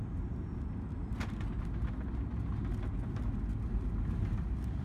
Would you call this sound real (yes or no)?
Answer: yes